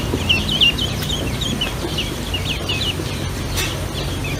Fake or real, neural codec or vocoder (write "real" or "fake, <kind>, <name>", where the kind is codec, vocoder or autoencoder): fake, vocoder, BigVGAN v2